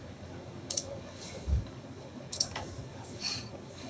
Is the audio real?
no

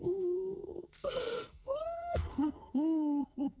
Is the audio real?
no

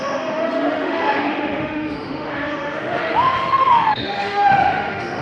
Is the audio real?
no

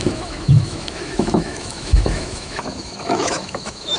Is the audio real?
no